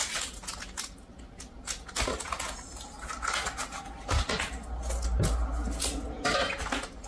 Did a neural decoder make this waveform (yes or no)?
no